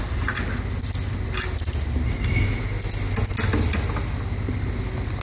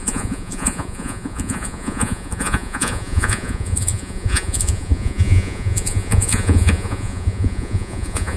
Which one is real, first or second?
first